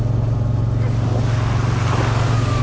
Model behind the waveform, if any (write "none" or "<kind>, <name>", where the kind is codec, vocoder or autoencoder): none